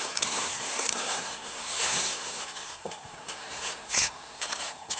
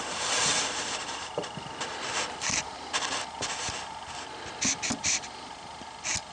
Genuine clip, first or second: second